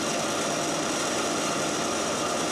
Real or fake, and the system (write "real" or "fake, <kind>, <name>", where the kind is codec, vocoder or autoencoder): real